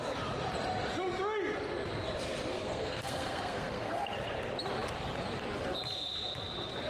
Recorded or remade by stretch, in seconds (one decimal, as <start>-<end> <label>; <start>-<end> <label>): 0.0-2.5 recorded; 2.5-4.0 remade; 4.0-6.9 recorded